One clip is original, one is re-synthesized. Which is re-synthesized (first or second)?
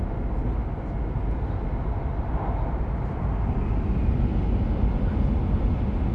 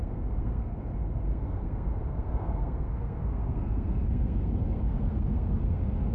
second